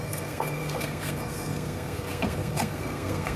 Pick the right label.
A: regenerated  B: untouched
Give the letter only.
A